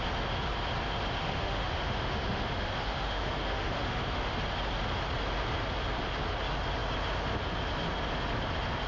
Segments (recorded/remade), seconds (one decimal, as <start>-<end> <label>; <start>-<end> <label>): 0.0-1.2 recorded; 1.2-4.3 remade; 4.3-8.9 recorded